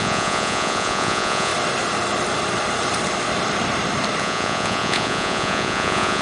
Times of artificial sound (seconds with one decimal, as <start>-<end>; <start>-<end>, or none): 0.0-1.5; 4.2-6.2